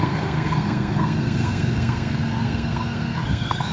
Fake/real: fake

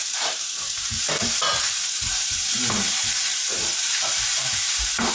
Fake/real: fake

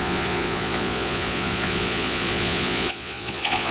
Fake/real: fake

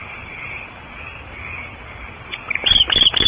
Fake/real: real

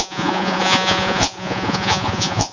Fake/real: fake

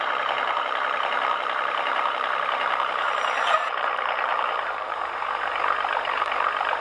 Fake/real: fake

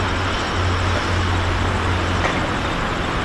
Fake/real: real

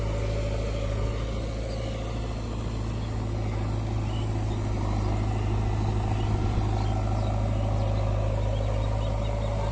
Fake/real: real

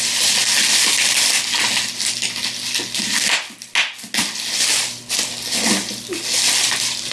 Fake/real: real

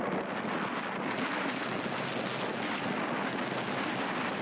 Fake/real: real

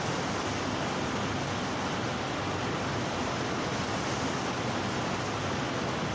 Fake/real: real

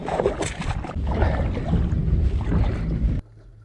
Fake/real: real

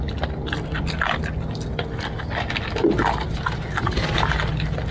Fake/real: real